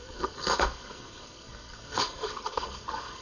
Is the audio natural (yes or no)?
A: no